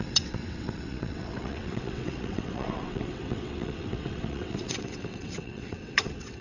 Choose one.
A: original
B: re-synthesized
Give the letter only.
B